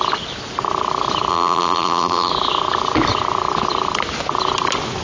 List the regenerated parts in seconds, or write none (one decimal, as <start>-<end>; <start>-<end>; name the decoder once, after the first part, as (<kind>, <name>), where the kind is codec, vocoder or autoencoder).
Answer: 1.3-2.3 (vocoder, BigVGAN v2)